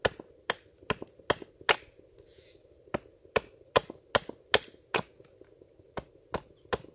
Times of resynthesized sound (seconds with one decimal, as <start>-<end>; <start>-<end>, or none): none